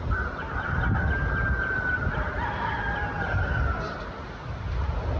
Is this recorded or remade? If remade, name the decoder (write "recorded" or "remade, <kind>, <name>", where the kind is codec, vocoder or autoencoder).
recorded